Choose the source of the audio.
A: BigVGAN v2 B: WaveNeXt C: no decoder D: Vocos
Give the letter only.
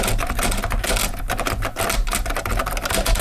C